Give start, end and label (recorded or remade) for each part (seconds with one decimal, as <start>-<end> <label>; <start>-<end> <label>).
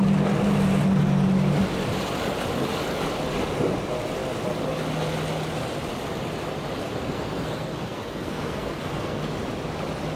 0.0-6.8 recorded; 6.8-9.2 remade; 9.2-10.2 recorded